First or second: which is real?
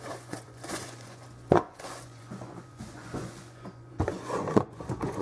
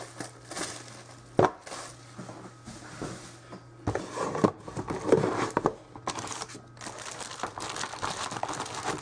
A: second